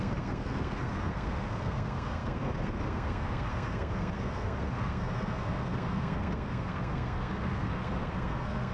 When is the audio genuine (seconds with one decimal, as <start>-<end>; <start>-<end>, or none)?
none